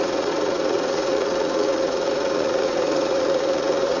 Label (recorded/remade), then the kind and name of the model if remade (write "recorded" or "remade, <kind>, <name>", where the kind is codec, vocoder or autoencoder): remade, vocoder, Vocos